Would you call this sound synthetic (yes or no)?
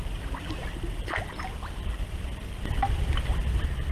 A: no